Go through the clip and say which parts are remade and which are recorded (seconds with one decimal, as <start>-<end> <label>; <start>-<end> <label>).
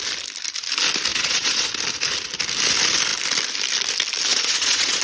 0.0-1.1 recorded; 1.1-1.7 remade; 1.7-4.3 recorded; 4.3-5.0 remade